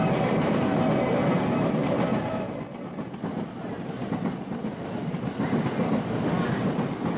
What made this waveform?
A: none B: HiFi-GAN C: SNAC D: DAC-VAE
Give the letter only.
A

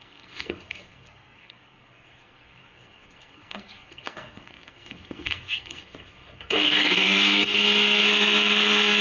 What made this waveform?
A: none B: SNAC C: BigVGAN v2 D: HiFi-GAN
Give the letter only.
B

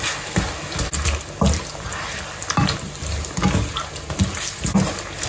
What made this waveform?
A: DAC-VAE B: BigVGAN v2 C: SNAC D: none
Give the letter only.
D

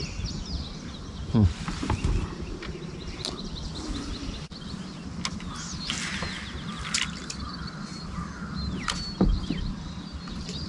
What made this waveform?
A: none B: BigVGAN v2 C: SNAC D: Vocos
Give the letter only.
A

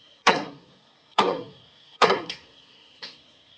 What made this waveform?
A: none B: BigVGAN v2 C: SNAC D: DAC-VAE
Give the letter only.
C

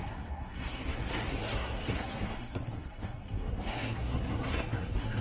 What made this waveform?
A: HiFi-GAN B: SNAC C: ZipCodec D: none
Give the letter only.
B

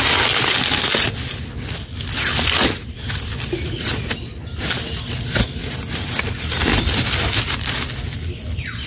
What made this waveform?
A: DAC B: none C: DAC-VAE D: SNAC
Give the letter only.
B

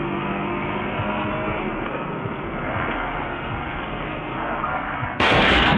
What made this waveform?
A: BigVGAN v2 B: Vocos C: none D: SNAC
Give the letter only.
D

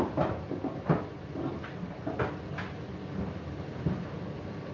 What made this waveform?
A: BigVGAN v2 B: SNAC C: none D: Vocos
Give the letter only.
C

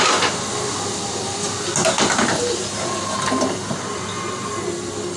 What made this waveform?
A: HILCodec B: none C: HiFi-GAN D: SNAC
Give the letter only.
B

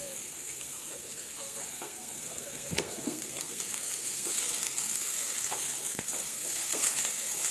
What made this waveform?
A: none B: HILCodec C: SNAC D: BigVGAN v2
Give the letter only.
C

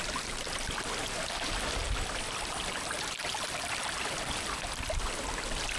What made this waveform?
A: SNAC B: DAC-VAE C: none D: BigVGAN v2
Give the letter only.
C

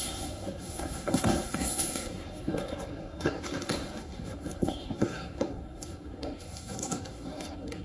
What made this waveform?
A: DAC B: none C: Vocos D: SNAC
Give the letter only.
D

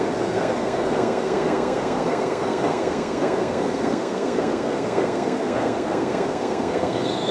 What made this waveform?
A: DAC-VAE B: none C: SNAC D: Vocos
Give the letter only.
C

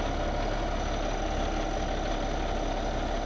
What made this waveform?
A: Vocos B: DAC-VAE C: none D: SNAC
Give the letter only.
C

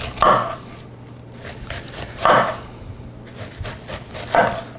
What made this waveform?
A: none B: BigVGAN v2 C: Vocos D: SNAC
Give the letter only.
A